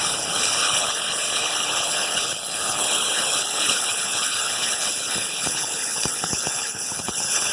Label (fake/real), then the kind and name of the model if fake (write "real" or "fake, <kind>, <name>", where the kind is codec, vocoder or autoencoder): fake, codec, HILCodec